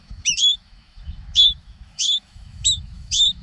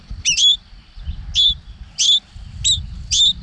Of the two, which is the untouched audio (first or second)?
second